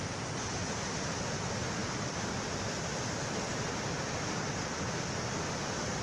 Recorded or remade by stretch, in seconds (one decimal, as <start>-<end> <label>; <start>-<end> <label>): 0.0-6.0 recorded